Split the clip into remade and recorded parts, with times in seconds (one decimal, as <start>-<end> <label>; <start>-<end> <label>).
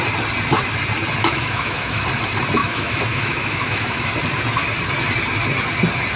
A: 0.0-1.2 recorded; 1.2-2.0 remade; 2.0-2.6 recorded; 2.6-4.1 remade; 4.1-6.2 recorded